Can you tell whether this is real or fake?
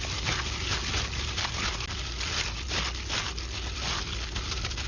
real